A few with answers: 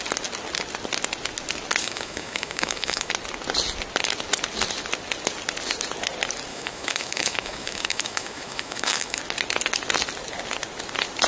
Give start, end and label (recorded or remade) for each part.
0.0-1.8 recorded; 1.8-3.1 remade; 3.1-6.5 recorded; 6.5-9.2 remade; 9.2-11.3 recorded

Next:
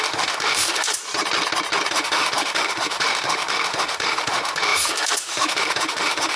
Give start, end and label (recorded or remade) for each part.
0.0-1.0 remade; 1.0-1.9 recorded; 1.9-6.4 remade

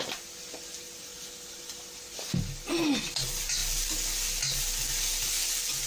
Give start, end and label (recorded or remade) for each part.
0.0-5.9 recorded